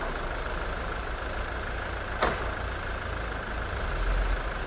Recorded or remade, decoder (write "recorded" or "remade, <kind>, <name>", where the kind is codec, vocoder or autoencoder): recorded